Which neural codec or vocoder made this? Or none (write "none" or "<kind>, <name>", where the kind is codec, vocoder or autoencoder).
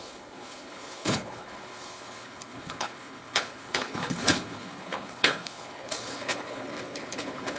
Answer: codec, HILCodec